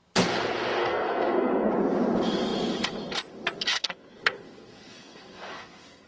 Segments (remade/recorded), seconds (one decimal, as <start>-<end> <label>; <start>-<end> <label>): 0.0-0.8 recorded; 0.8-1.7 remade; 1.7-3.7 recorded; 3.7-6.1 remade